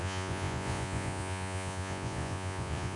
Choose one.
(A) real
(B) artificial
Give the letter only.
B